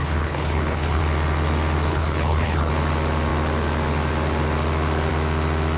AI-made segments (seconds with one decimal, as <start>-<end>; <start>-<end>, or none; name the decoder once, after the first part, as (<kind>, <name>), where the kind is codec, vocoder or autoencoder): 0.0-1.0 (codec, HILCodec); 1.9-2.7